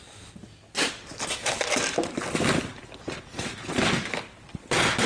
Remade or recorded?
recorded